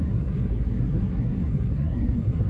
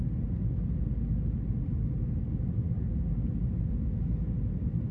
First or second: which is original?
second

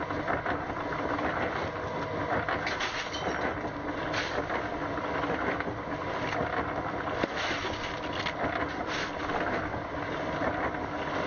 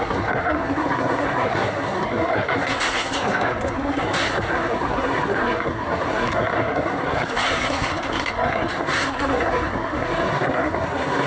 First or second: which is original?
first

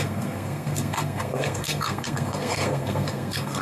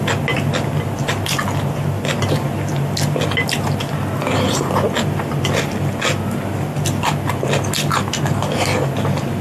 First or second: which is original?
second